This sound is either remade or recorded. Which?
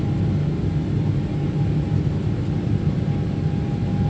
recorded